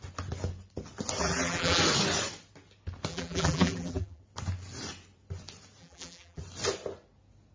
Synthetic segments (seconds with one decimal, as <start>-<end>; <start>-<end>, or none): 1.2-1.8; 3.1-4.2; 5.8-6.4